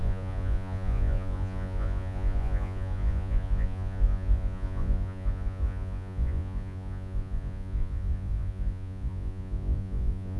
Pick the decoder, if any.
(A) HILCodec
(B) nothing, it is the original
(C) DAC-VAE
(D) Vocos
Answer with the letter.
D